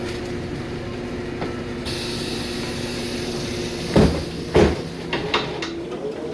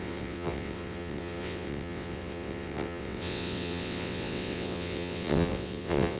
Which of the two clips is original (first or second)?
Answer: first